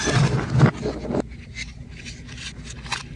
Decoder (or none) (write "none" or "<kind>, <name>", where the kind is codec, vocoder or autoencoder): none